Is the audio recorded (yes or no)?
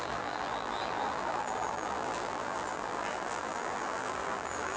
no